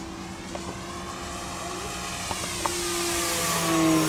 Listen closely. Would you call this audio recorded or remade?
recorded